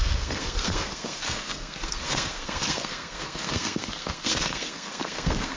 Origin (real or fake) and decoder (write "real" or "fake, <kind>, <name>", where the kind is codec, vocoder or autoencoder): fake, codec, SNAC